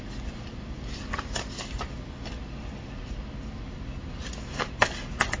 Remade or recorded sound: recorded